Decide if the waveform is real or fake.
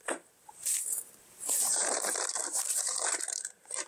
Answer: fake